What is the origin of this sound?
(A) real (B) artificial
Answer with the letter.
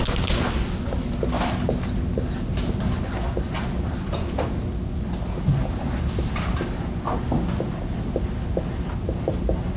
A